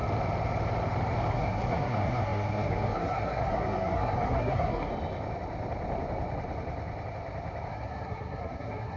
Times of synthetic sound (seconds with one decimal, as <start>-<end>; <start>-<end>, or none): 1.3-4.9; 7.7-9.0